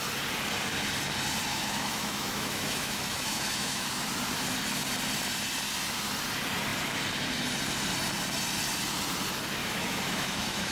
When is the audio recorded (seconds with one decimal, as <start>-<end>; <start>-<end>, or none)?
0.0-1.5; 3.9-9.6